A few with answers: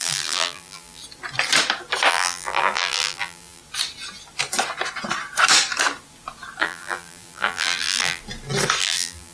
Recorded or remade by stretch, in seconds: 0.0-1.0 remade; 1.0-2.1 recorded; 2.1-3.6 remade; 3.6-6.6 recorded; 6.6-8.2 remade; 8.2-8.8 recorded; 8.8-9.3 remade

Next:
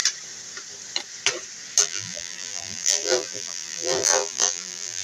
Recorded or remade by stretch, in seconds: 0.0-1.8 recorded; 1.8-5.0 remade

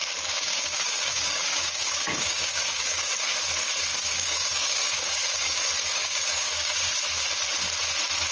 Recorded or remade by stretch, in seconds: 0.0-3.1 remade; 3.1-3.9 recorded; 3.9-6.9 remade; 6.9-8.3 recorded

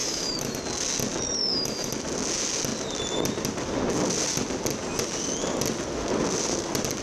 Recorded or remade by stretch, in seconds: 0.0-0.6 remade; 0.6-1.4 recorded; 1.4-1.9 remade; 1.9-7.0 recorded

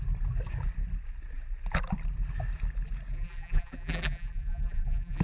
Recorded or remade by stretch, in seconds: 0.0-3.1 recorded; 3.1-5.2 remade

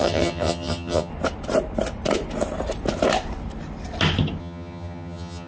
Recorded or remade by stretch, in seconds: 0.0-1.1 remade; 1.1-4.4 recorded; 4.4-5.5 remade